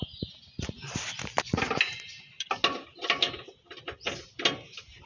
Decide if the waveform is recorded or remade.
recorded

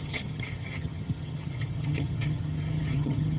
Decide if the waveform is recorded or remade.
remade